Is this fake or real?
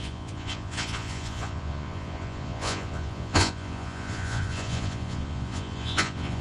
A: fake